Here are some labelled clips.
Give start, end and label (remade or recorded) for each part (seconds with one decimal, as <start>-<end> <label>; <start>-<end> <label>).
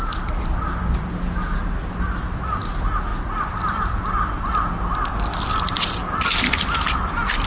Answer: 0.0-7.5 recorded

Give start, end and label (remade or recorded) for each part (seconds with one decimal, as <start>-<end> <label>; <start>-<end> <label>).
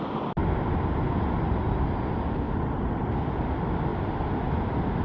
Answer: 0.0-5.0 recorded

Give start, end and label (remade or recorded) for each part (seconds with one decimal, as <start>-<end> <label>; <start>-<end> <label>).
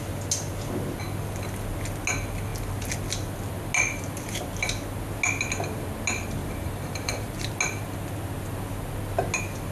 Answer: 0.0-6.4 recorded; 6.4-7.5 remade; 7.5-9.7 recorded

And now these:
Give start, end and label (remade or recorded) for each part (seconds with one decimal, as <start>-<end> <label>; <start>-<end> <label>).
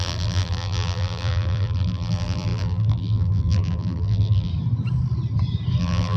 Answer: 0.0-4.5 remade; 4.5-5.8 recorded; 5.8-6.2 remade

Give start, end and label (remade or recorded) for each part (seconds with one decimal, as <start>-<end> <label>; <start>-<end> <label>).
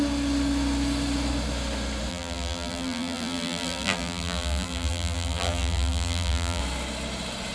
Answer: 0.0-2.1 recorded; 2.1-6.6 remade; 6.6-7.5 recorded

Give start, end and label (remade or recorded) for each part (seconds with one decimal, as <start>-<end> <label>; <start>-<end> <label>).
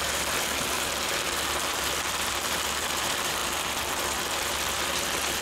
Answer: 0.0-0.9 remade; 0.9-2.3 recorded; 2.3-5.4 remade